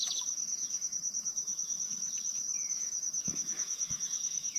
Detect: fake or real fake